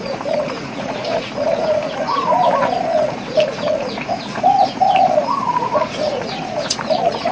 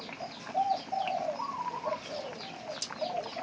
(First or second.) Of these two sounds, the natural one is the second